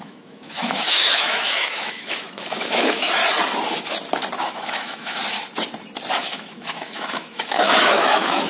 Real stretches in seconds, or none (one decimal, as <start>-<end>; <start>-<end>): 3.2-4.4; 5.2-6.2